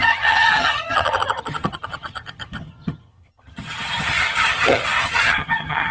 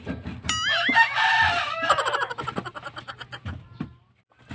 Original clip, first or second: second